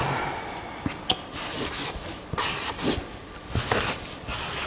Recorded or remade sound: recorded